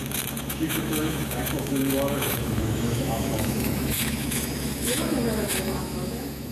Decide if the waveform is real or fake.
fake